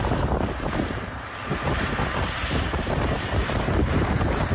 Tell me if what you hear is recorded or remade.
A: remade